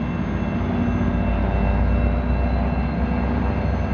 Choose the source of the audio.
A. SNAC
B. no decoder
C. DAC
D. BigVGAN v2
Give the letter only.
B